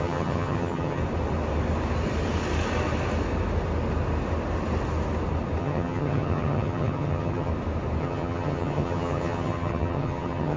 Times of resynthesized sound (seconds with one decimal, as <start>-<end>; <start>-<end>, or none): 0.0-1.0; 5.6-7.5; 8.0-10.6